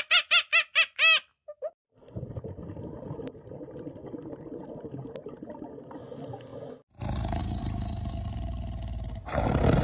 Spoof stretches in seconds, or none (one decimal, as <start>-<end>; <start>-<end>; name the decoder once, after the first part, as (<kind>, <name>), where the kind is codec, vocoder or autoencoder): none

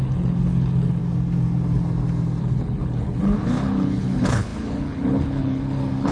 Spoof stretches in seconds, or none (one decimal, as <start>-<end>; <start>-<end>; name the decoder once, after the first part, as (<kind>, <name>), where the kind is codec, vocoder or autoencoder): 0.0-1.0 (codec, HILCodec); 2.4-6.1

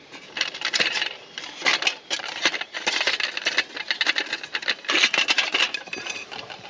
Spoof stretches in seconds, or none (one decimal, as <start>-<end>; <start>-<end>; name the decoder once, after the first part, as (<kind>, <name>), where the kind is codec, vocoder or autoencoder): 0.0-1.7 (vocoder, BigVGAN v2); 5.7-6.7

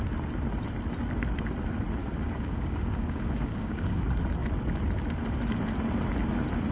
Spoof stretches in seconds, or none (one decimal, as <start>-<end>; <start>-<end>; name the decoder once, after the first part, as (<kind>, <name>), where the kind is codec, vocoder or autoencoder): 2.0-4.0 (codec, DAC)

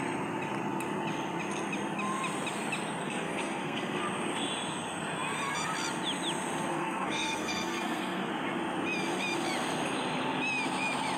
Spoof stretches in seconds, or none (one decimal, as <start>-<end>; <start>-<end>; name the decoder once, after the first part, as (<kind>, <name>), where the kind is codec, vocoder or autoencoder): 3.0-4.0 (codec, SNAC); 6.7-8.3